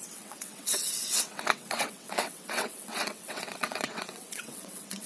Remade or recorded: remade